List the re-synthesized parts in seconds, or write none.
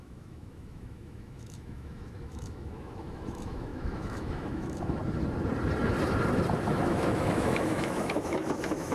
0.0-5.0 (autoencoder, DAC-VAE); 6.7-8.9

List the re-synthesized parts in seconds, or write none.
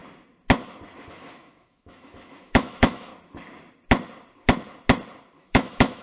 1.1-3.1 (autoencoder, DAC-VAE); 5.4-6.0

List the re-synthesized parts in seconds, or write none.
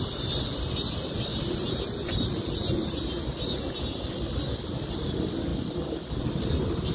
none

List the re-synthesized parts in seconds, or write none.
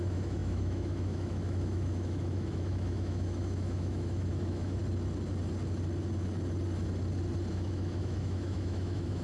0.0-4.8 (autoencoder, DAC-VAE); 7.5-9.2